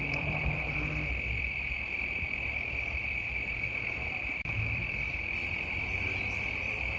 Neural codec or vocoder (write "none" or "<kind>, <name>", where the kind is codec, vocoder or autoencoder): vocoder, BigVGAN v2